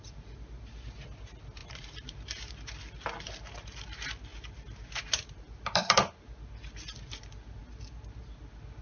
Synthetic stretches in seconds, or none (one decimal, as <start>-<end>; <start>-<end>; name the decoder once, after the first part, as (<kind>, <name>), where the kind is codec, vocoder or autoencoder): 1.6-2.5 (vocoder, BigVGAN v2); 4.3-6.1